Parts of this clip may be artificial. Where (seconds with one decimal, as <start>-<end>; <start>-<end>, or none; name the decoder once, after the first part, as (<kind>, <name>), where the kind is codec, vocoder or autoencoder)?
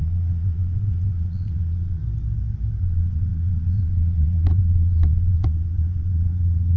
0.0-2.0 (vocoder, Vocos); 2.8-6.8